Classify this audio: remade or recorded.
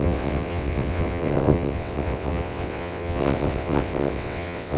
remade